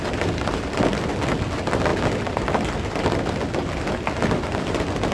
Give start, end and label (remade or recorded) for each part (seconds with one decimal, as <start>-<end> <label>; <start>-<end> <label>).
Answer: 0.0-5.1 recorded